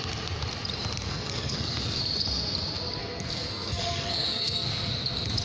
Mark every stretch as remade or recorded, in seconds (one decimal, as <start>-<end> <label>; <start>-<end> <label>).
0.0-1.1 recorded; 1.1-2.0 remade; 2.0-3.0 recorded; 3.0-4.9 remade; 4.9-5.4 recorded